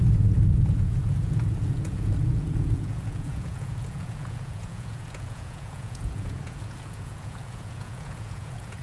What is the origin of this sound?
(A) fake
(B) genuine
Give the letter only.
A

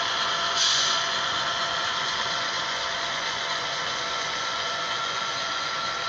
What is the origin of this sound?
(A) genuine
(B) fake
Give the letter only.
B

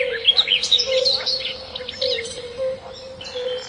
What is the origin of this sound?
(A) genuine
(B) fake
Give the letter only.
A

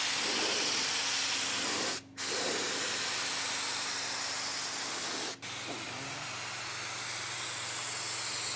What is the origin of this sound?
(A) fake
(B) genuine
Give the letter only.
B